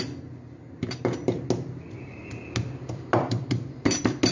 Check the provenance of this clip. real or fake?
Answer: real